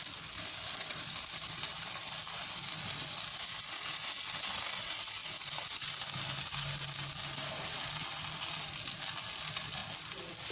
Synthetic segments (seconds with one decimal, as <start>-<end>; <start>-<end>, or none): none